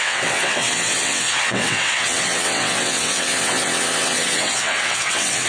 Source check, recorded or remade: remade